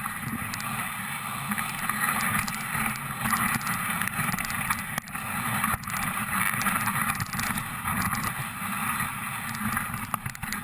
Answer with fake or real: real